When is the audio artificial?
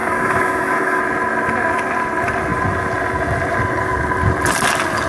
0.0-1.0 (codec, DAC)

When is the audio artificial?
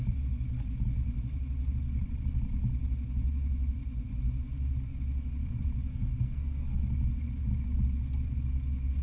5.9-6.8 (codec, SNAC)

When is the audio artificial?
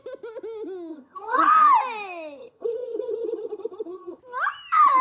0.9-1.5 (vocoder, HiFi-GAN); 2.4-4.2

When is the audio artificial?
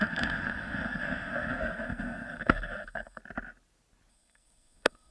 0.0-3.2 (codec, SNAC); 4.1-5.1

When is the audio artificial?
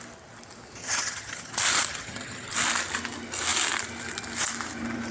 0.8-1.5 (vocoder, HiFi-GAN); 1.9-2.5